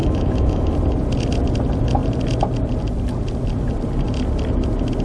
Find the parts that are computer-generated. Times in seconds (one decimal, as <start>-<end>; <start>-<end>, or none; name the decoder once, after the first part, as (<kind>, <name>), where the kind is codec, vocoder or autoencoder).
0.0-0.7 (autoencoder, DAC-VAE)